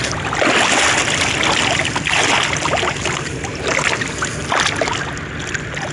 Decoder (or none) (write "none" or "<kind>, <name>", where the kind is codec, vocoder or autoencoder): none